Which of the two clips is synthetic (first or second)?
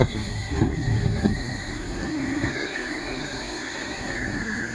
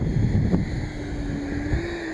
first